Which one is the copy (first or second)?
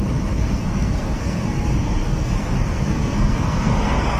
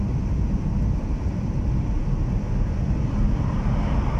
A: first